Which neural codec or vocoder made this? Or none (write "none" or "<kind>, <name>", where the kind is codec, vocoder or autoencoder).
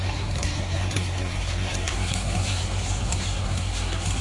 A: codec, SNAC